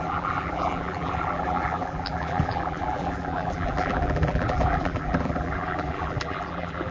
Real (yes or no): no